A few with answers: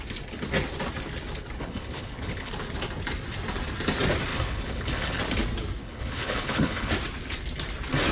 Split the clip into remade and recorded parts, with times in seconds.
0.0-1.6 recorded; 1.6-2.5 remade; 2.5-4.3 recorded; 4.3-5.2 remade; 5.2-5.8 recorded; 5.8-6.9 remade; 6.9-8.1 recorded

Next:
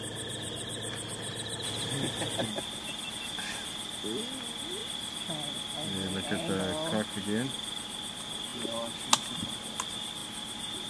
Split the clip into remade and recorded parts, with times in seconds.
0.0-10.9 recorded

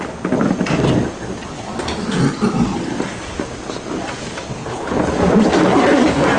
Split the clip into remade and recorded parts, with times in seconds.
0.0-4.6 recorded; 4.6-5.1 remade; 5.1-6.4 recorded

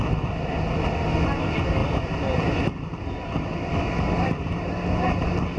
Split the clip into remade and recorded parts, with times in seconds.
0.0-5.6 recorded

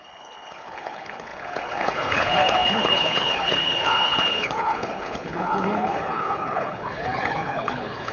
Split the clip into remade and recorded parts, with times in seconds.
0.0-8.1 remade

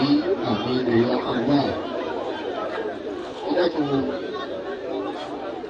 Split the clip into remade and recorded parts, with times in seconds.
0.0-0.8 recorded; 0.8-1.6 remade; 1.6-3.2 recorded; 3.2-3.8 remade; 3.8-5.7 recorded

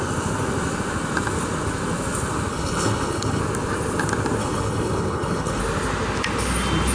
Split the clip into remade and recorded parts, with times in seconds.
0.0-2.5 recorded; 2.5-3.4 remade; 3.4-4.4 recorded; 4.4-5.6 remade; 5.6-6.9 recorded